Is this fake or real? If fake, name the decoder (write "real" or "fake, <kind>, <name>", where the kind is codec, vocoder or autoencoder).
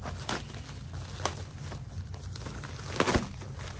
real